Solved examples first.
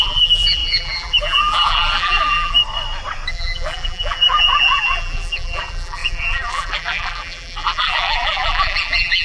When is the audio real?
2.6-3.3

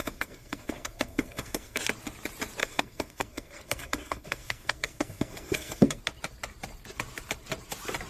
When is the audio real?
1.8-2.6; 6.0-8.1